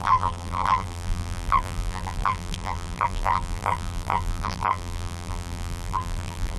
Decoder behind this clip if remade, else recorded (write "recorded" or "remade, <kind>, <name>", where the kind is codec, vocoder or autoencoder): remade, vocoder, BigVGAN v2